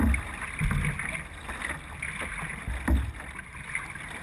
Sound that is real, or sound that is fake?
real